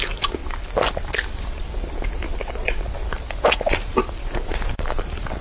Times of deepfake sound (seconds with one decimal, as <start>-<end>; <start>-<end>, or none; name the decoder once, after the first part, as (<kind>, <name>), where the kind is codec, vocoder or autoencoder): 0.0-0.4 (vocoder, BigVGAN v2); 3.6-5.4